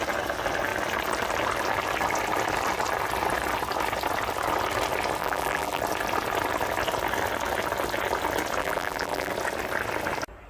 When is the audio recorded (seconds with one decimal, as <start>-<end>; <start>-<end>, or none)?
0.0-5.2; 5.8-8.6; 9.3-10.5